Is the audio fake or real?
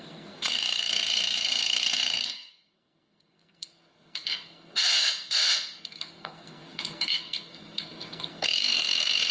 fake